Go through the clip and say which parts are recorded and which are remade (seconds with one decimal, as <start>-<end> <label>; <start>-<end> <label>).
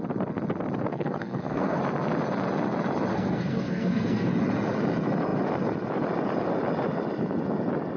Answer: 0.0-0.9 recorded; 0.9-1.8 remade; 1.8-3.1 recorded; 3.1-4.3 remade; 4.3-8.0 recorded